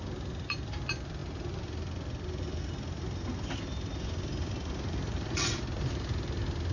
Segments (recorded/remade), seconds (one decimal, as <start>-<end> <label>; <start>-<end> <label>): 0.0-6.7 recorded